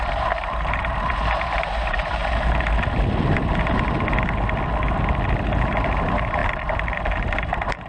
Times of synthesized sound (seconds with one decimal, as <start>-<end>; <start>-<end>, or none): 0.0-2.2; 5.3-6.4; 6.9-7.9